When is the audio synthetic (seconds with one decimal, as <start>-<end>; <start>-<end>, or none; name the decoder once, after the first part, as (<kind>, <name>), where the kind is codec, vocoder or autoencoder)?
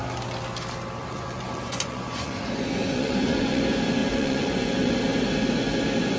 1.0-2.4 (vocoder, Vocos); 2.8-3.6; 4.0-4.9